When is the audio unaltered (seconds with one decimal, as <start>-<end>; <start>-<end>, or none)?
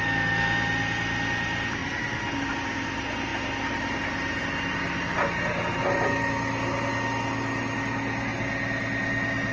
0.0-9.5